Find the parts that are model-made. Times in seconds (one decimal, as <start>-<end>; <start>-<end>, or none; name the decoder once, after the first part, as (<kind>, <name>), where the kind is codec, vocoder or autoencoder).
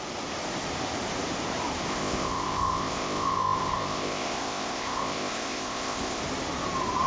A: 1.9-6.2 (codec, ZipCodec)